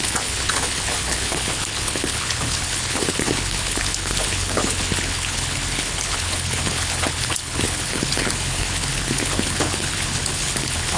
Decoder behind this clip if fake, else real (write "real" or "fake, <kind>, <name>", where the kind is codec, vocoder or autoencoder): fake, codec, HILCodec